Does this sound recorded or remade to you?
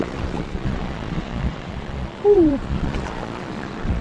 remade